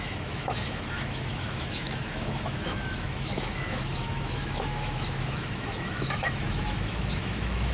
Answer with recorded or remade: remade